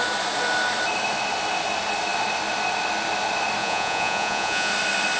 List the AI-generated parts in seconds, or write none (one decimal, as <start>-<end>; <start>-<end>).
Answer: 3.6-4.7